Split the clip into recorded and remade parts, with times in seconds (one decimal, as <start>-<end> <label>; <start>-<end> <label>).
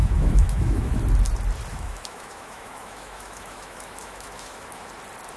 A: 0.0-1.0 remade; 1.0-1.7 recorded; 1.7-4.9 remade; 4.9-5.4 recorded